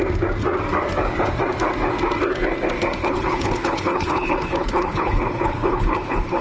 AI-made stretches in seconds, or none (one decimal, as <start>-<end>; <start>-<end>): 3.0-6.4